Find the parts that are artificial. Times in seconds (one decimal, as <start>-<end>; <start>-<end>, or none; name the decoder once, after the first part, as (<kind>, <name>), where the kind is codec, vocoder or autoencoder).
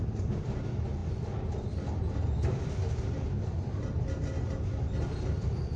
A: none